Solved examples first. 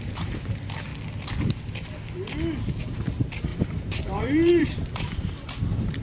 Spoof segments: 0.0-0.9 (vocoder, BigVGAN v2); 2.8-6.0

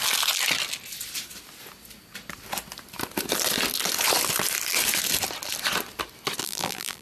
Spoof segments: 6.4-7.0 (vocoder, BigVGAN v2)

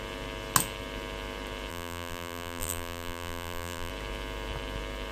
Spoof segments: 1.7-3.9 (vocoder, BigVGAN v2)